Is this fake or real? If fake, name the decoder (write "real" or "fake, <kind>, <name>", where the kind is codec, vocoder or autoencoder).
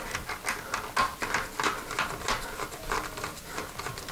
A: real